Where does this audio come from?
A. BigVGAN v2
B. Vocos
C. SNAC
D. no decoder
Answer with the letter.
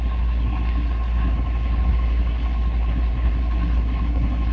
C